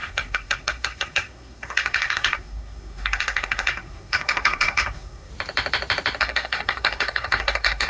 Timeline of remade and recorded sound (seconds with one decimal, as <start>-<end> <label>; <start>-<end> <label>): 0.0-5.3 remade; 5.3-6.2 recorded; 6.2-7.9 remade